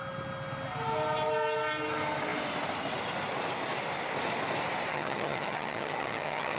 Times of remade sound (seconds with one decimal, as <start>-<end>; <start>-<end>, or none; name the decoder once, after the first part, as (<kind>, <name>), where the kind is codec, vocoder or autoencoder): 4.9-6.6 (vocoder, HiFi-GAN)